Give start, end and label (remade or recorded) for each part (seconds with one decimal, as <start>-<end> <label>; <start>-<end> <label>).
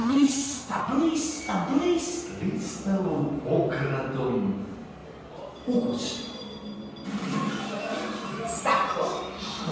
0.0-0.8 remade; 0.8-9.7 recorded